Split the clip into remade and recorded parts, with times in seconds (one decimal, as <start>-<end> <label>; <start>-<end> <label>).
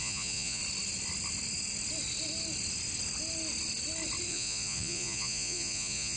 0.0-0.6 remade; 0.6-4.3 recorded; 4.3-6.2 remade